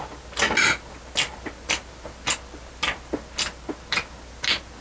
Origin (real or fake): real